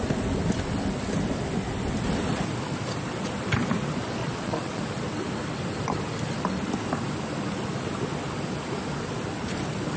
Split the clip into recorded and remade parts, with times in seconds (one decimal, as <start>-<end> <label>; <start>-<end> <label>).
0.0-4.2 recorded; 4.2-4.8 remade; 4.8-10.0 recorded